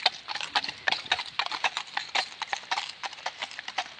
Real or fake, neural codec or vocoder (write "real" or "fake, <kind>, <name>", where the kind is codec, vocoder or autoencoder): real